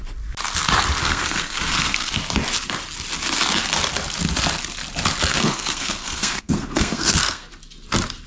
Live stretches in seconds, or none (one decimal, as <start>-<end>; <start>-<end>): 0.0-1.0; 2.1-5.3; 7.5-8.3